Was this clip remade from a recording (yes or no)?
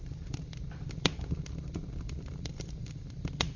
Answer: yes